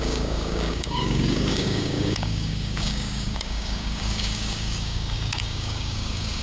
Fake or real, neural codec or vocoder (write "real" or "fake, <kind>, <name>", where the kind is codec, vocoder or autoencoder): fake, codec, DAC